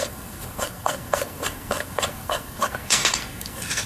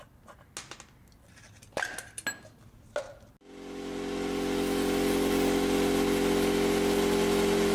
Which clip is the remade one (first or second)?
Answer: first